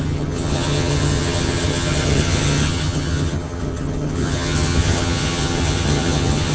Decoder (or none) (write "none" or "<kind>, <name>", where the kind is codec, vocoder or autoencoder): vocoder, HiFi-GAN